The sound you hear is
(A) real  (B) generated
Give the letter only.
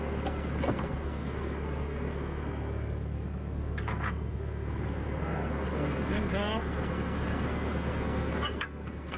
B